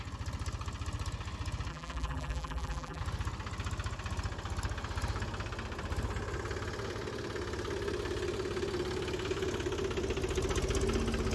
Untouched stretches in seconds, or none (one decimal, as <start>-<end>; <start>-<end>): 0.0-1.7; 3.0-11.3